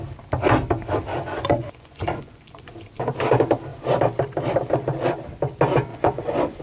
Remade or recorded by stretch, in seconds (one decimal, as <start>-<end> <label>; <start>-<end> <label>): 0.0-1.1 recorded; 1.1-2.7 remade; 2.7-5.9 recorded; 5.9-6.6 remade